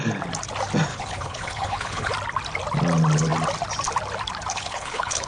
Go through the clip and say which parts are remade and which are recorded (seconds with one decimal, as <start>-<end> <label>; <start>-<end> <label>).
0.0-0.9 recorded; 0.9-2.1 remade; 2.1-4.5 recorded; 4.5-5.3 remade